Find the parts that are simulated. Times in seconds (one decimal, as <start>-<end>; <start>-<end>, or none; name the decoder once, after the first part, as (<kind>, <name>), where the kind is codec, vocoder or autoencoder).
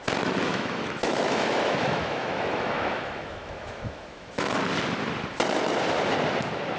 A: 0.5-4.6 (autoencoder, DAC-VAE)